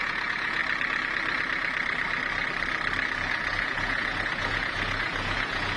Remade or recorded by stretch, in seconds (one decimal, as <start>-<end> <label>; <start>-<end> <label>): 0.0-0.6 remade; 0.6-3.3 recorded; 3.3-5.8 remade